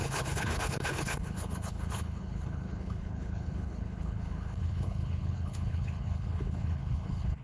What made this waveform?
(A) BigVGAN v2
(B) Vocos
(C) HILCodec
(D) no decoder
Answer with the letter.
C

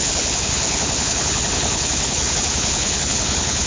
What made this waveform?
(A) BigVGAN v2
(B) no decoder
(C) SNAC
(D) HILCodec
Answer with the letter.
D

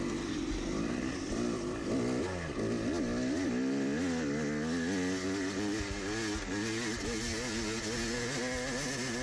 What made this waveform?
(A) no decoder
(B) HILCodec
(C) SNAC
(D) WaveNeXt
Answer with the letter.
A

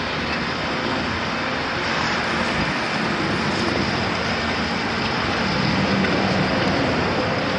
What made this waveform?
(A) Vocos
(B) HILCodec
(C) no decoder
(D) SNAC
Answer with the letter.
C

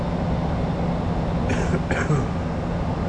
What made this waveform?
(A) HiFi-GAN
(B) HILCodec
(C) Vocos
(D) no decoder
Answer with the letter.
D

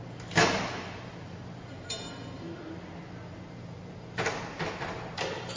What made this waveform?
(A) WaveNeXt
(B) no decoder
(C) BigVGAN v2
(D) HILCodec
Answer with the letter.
B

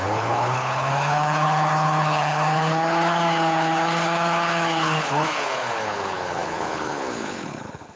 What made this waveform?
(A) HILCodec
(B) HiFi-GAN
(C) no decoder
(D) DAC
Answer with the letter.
A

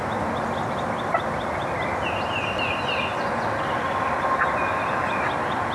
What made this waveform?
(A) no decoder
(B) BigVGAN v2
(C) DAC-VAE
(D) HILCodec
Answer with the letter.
A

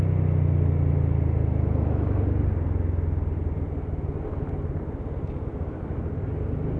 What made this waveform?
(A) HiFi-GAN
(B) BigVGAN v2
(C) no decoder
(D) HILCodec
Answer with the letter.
C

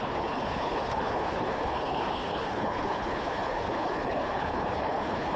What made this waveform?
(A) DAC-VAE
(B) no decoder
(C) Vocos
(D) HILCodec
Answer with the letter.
D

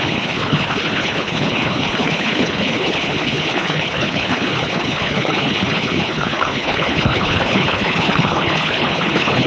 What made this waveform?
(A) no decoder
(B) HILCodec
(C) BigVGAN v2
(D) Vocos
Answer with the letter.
B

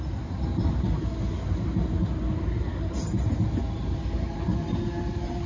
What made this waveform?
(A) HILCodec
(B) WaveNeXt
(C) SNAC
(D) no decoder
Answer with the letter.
D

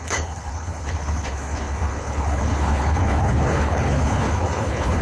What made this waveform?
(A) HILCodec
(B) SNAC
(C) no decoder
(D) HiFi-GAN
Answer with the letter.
A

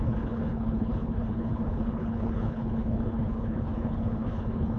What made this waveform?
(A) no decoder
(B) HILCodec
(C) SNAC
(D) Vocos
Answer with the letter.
B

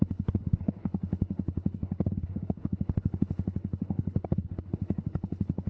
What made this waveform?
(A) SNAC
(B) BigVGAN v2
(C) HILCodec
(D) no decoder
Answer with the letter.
C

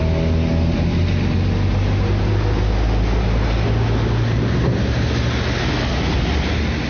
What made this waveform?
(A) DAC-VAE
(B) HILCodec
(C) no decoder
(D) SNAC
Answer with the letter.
C